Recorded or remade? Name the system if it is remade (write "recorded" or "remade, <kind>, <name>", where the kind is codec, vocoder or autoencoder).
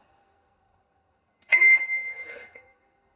remade, codec, SNAC